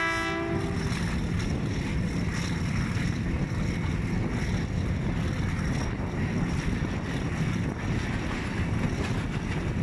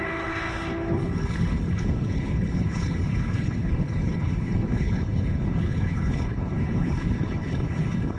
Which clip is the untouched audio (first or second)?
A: first